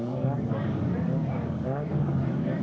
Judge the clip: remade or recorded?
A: remade